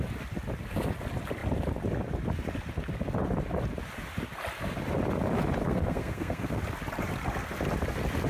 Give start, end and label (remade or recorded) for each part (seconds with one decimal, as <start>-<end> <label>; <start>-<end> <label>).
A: 0.0-5.6 recorded; 5.6-6.6 remade; 6.6-8.3 recorded